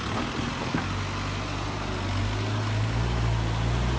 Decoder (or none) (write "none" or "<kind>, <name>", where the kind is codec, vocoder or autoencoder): none